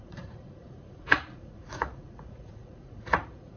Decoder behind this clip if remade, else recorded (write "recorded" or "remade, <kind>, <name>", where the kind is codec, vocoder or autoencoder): remade, vocoder, Vocos